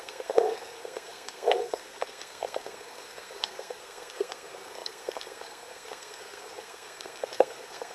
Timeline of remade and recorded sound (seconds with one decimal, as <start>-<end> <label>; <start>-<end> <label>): 0.0-7.9 remade